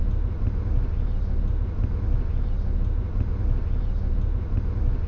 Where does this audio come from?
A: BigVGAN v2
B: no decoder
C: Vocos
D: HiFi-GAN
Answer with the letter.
B